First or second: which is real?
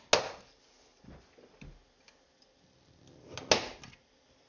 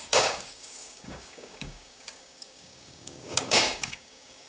first